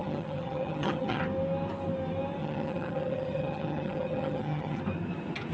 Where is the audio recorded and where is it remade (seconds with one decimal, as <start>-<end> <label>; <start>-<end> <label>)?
0.0-1.2 remade; 1.2-2.4 recorded; 2.4-4.8 remade; 4.8-5.5 recorded